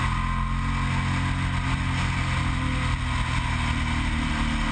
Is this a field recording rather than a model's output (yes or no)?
yes